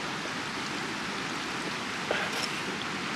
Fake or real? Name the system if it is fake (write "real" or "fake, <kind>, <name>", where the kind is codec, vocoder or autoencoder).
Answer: real